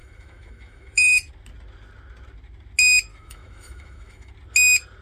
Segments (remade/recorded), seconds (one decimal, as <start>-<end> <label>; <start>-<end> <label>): 0.0-1.3 remade; 1.3-3.1 recorded; 3.1-4.3 remade; 4.3-5.0 recorded